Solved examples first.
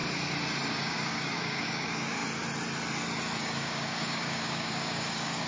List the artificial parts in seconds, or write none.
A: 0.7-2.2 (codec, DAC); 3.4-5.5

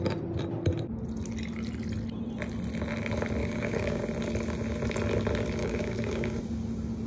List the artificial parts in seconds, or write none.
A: 3.4-4.0 (codec, DAC); 5.6-6.4